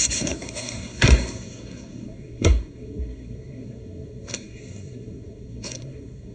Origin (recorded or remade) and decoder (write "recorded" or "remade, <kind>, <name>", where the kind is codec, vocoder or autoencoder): remade, codec, SNAC